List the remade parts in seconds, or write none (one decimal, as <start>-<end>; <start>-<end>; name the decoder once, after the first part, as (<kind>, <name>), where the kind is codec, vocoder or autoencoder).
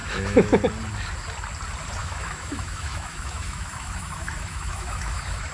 0.0-0.6 (autoencoder, DAC-VAE); 2.0-5.5